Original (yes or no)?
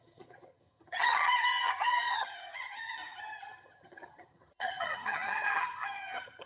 no